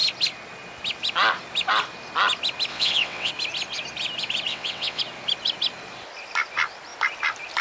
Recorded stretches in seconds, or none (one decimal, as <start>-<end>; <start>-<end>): 0.0-2.7; 3.3-4.5; 5.0-7.6